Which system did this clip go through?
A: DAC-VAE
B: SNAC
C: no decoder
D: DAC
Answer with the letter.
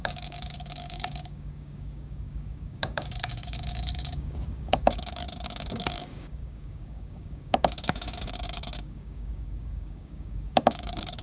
D